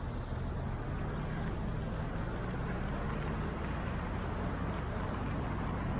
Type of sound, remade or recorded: recorded